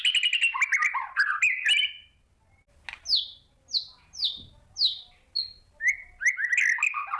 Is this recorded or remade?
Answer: recorded